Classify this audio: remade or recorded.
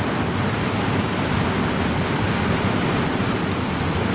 recorded